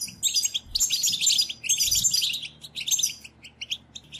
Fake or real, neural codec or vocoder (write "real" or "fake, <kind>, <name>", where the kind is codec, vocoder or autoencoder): real